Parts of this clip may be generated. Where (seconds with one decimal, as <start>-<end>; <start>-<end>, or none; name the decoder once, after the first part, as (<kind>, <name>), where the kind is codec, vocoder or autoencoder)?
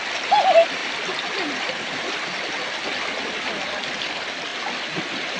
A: none